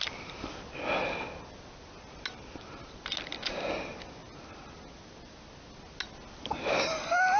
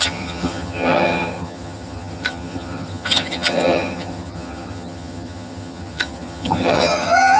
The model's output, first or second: second